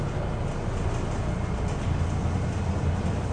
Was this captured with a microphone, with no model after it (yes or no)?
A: yes